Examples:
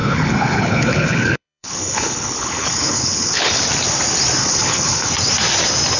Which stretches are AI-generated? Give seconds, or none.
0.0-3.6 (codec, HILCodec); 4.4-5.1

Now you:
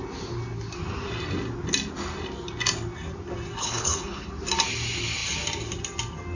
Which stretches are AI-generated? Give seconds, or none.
3.6-4.3 (codec, HILCodec)

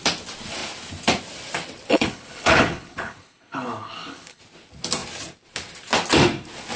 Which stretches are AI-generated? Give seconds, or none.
1.9-4.4 (codec, HILCodec)

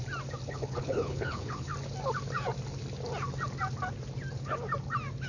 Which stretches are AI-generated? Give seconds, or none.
0.5-1.7 (codec, HILCodec)

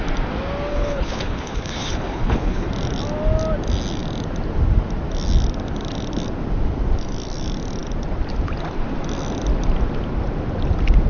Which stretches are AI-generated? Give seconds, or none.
0.7-2.7 (codec, HILCodec)